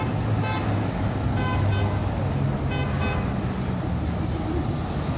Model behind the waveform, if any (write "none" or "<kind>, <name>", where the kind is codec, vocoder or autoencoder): none